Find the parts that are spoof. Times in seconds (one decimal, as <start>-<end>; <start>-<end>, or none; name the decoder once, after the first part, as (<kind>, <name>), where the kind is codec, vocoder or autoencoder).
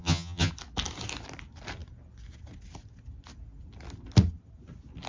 0.0-0.5 (vocoder, HiFi-GAN)